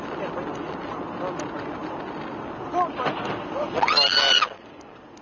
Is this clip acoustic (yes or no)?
yes